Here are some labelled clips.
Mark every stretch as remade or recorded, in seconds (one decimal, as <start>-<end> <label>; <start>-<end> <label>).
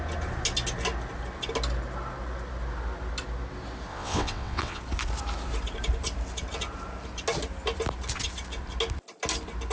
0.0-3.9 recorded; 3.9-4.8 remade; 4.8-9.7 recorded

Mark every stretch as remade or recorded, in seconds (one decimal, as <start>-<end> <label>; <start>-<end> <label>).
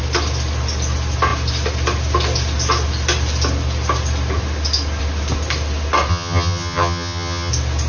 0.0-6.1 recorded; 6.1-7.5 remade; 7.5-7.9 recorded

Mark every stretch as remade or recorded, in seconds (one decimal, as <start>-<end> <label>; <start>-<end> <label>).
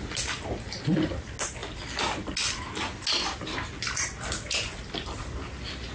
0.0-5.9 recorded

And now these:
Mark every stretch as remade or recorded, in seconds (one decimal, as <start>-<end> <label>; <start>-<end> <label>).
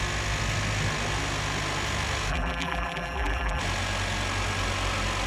0.0-2.3 recorded; 2.3-3.6 remade; 3.6-5.3 recorded